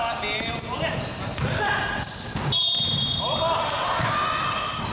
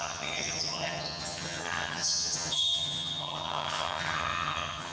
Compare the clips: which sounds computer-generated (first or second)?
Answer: second